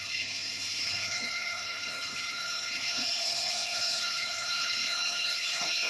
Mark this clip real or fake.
fake